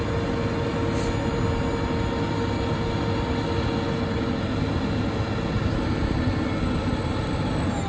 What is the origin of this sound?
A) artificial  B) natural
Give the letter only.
B